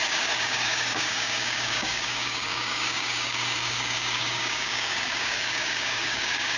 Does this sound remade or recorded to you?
remade